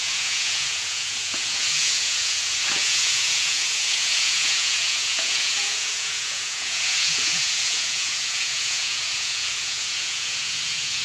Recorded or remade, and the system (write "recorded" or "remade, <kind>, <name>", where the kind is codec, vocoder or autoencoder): remade, vocoder, Vocos